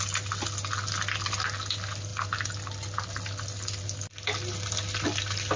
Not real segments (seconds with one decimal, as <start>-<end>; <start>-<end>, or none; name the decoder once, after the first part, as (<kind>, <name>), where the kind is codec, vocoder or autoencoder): none